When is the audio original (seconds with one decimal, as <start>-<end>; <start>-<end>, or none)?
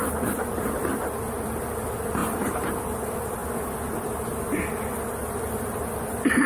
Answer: 0.0-6.5